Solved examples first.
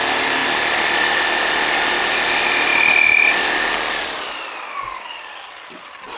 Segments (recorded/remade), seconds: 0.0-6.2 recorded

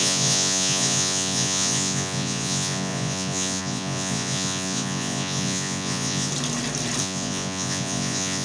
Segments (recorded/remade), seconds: 0.0-6.3 remade; 6.3-7.0 recorded; 7.0-8.4 remade

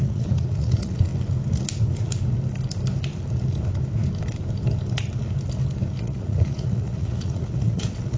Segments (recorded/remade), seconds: 0.0-1.1 remade; 1.1-6.0 recorded; 6.0-8.2 remade

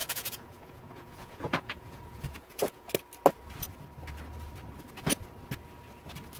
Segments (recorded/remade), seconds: 0.0-2.9 remade; 2.9-6.4 recorded

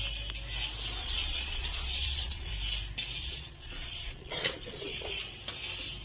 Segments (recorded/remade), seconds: 0.0-1.0 recorded; 1.0-2.5 remade; 2.5-3.2 recorded; 3.2-5.1 remade; 5.1-6.0 recorded

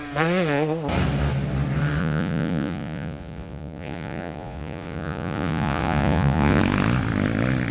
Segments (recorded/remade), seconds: 0.0-2.0 recorded; 2.0-6.6 remade; 6.6-7.7 recorded

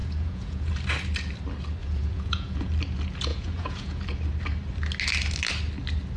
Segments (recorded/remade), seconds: 0.0-0.7 remade; 0.7-1.8 recorded; 1.8-2.7 remade; 2.7-3.3 recorded; 3.3-4.0 remade; 4.0-6.2 recorded

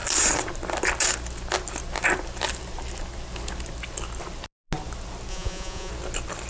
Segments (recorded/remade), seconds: 0.0-5.3 recorded; 5.3-5.9 remade; 5.9-6.5 recorded